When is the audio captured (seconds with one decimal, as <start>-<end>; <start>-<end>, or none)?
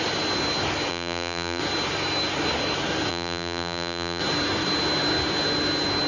0.0-0.9; 1.6-3.1; 4.2-6.1